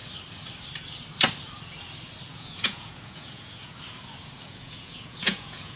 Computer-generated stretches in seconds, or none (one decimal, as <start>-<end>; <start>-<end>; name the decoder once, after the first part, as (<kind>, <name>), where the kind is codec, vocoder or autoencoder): 2.3-5.8 (vocoder, Vocos)